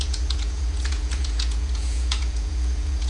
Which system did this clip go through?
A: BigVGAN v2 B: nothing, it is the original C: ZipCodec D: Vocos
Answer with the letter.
D